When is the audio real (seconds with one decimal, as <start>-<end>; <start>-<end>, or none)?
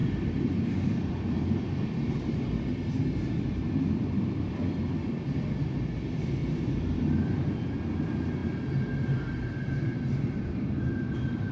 4.8-6.4; 7.0-8.4